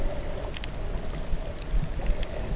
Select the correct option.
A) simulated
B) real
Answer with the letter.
B